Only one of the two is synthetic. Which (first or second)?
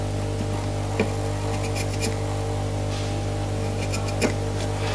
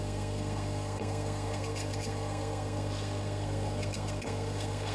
second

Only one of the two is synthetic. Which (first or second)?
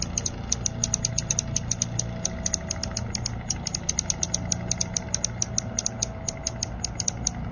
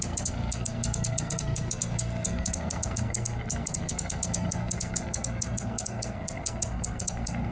second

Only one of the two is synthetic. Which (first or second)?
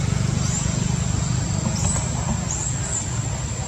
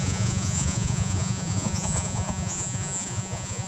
second